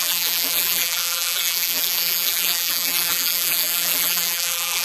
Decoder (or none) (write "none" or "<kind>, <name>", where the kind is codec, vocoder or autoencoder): vocoder, BigVGAN v2